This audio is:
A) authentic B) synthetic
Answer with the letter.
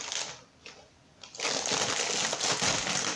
A